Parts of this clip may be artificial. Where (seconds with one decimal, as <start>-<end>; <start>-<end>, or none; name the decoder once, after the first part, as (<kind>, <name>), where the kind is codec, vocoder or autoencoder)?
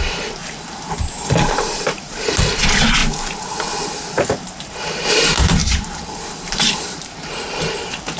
0.0-3.0 (vocoder, BigVGAN v2); 4.3-8.2